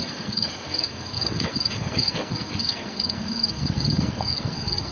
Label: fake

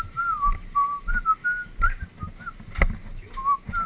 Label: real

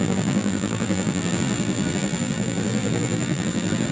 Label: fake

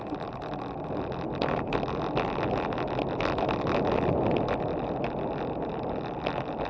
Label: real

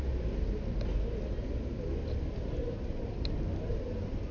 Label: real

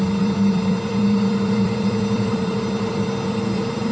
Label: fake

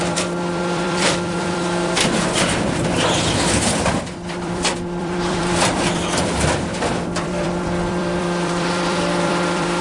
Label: fake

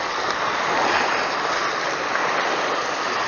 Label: real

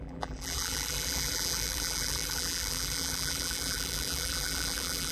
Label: fake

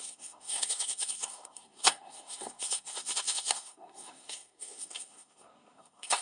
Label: fake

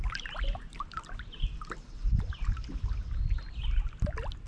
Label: real